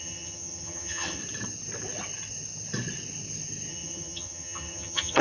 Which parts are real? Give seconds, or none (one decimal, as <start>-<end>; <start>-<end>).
1.2-3.7